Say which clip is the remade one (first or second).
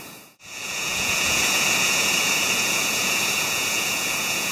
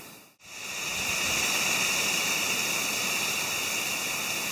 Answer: first